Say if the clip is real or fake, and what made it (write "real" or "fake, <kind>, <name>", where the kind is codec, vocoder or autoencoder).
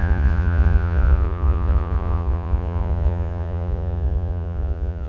fake, vocoder, Vocos